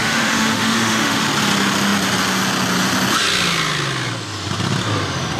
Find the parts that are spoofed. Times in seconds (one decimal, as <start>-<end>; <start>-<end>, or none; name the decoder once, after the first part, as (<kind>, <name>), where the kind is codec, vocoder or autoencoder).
0.0-1.2 (autoencoder, DAC-VAE)